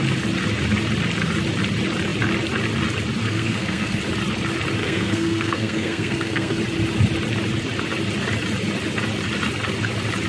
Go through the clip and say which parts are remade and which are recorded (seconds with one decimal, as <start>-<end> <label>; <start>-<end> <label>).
0.0-3.2 recorded; 3.2-4.0 remade; 4.0-4.8 recorded; 4.8-6.6 remade; 6.6-10.3 recorded